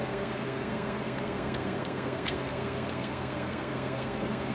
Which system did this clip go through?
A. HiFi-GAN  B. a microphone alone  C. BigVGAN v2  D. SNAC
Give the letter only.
D